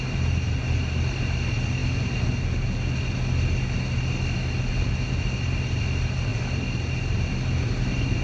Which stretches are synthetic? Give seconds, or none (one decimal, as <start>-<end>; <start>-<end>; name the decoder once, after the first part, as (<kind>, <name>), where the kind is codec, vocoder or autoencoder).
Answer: none